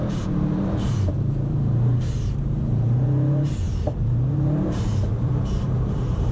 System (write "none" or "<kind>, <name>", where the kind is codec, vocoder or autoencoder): vocoder, BigVGAN v2